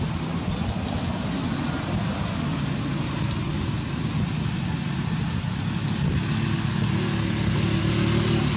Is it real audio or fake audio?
real